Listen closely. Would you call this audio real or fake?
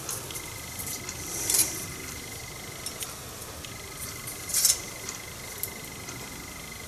real